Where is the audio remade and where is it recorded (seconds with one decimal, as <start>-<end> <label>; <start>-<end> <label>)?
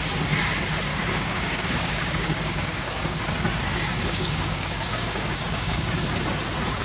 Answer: 0.0-0.9 recorded; 0.9-3.2 remade; 3.2-3.9 recorded; 3.9-5.9 remade; 5.9-6.8 recorded